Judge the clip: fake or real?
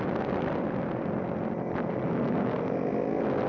real